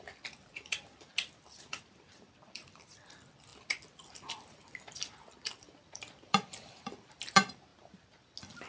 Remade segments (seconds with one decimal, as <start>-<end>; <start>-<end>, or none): 0.0-7.7